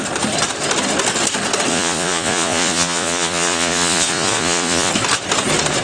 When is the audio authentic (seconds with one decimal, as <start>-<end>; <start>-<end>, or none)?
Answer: 0.0-1.7; 4.9-5.8